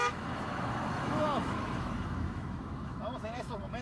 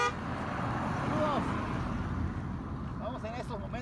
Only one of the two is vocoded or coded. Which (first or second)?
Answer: first